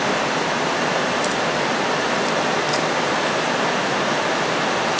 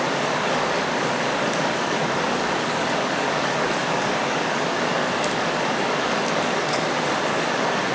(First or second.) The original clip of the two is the first